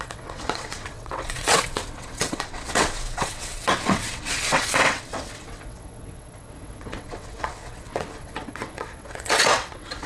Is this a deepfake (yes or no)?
yes